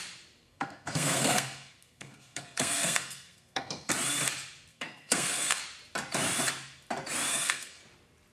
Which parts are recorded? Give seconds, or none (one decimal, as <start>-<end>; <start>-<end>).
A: 0.0-0.4; 3.9-4.7; 5.6-7.3; 7.8-8.3